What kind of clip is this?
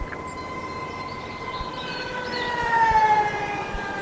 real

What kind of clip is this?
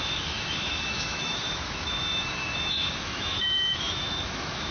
fake